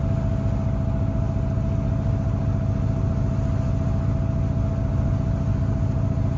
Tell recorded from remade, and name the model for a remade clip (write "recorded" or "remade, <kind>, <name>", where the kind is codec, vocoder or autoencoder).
recorded